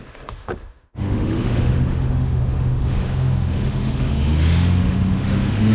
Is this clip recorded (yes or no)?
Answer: no